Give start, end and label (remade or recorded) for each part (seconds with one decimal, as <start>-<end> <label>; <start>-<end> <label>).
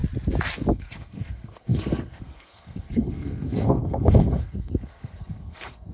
0.0-0.7 recorded; 0.7-5.9 remade